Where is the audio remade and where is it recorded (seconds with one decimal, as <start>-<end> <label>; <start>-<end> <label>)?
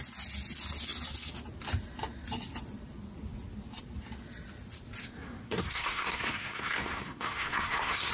0.0-5.0 recorded; 5.0-8.1 remade